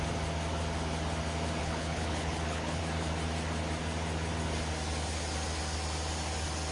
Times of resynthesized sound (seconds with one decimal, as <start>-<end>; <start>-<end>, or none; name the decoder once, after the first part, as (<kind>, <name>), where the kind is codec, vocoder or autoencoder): 1.6-2.8 (codec, HILCodec)